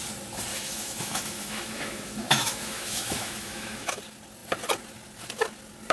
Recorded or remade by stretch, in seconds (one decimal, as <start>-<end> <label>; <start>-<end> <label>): 0.0-0.5 recorded; 0.5-4.0 remade; 4.0-5.9 recorded